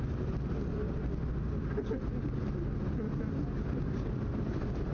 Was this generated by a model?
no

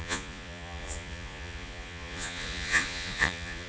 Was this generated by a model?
yes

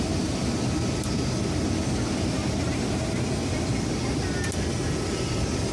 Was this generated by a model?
no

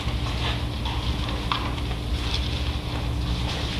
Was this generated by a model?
no